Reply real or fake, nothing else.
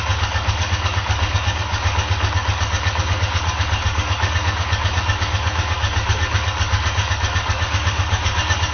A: fake